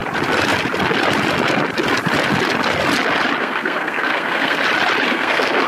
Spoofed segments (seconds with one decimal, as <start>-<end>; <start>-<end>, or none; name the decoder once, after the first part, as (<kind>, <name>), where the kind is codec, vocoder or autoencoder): 3.4-4.6 (codec, SNAC); 5.1-5.7